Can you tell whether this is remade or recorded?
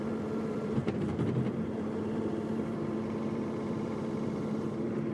remade